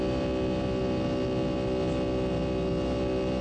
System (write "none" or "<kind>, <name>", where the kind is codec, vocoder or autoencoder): none